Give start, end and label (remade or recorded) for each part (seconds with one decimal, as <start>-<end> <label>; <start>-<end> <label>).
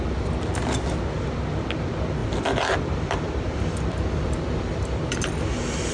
0.0-2.2 recorded; 2.2-5.2 remade; 5.2-5.9 recorded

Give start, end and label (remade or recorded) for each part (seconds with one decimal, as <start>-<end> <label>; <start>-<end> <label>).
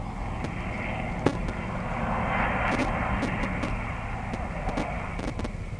0.0-5.8 recorded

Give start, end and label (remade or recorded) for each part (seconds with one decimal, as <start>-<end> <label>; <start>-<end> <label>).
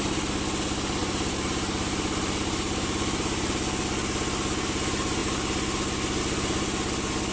0.0-1.0 recorded; 1.0-3.5 remade; 3.5-7.3 recorded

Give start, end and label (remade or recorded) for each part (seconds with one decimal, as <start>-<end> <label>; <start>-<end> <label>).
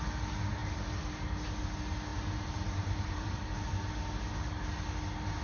0.0-2.1 recorded; 2.1-3.6 remade; 3.6-5.4 recorded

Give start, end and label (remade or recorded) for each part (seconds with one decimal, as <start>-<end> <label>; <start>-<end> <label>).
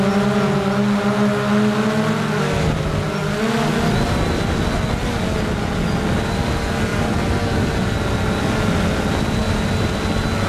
0.0-6.9 recorded; 6.9-7.7 remade; 7.7-9.4 recorded; 9.4-9.9 remade; 9.9-10.5 recorded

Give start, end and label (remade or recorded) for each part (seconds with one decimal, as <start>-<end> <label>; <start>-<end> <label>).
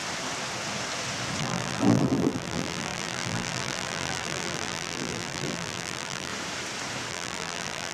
0.0-1.4 recorded; 1.4-6.3 remade; 6.3-7.1 recorded; 7.1-7.9 remade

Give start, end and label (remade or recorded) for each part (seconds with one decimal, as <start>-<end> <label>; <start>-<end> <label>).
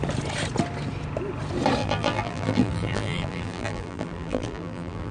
0.0-1.8 recorded; 1.8-5.1 remade